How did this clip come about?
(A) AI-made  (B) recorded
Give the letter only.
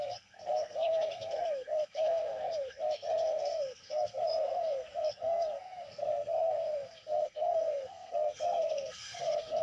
A